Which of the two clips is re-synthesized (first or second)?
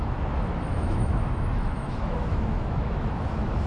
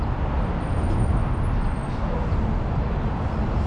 first